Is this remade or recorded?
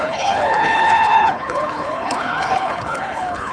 remade